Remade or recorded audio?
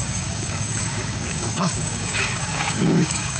remade